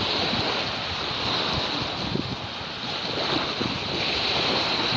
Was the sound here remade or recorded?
recorded